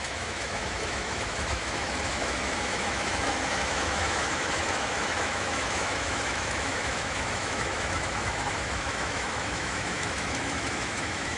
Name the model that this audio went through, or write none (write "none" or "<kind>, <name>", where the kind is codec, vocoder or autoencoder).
autoencoder, DAC-VAE